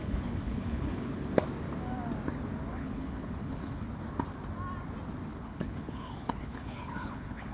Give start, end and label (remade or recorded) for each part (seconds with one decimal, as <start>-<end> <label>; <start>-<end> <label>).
0.0-1.3 remade; 1.3-2.7 recorded; 2.7-3.9 remade; 3.9-5.3 recorded; 5.3-7.5 remade

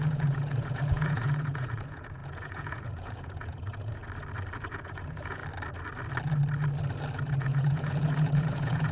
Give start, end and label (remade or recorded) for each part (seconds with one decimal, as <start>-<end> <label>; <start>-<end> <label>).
0.0-4.0 remade; 4.0-4.6 recorded; 4.6-5.4 remade; 5.4-7.3 recorded; 7.3-8.9 remade

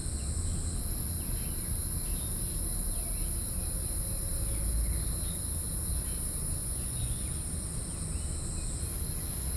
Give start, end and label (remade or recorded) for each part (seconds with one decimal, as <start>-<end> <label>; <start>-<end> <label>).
0.0-6.6 recorded; 6.6-7.3 remade; 7.3-9.6 recorded

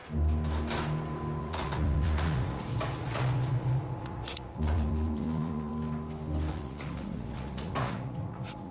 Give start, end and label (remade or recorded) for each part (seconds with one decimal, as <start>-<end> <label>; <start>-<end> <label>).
0.0-1.4 recorded; 1.4-5.7 remade; 5.7-6.5 recorded; 6.5-8.7 remade